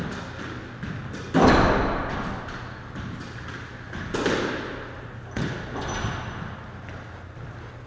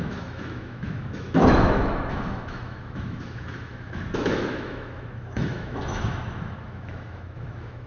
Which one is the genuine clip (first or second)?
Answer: first